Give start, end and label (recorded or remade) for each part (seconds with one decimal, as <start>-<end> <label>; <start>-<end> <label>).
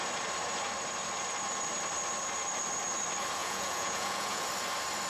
0.0-3.4 recorded; 3.4-4.4 remade; 4.4-5.1 recorded